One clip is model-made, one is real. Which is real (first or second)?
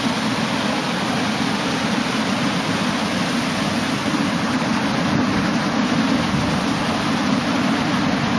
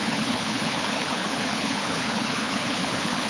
first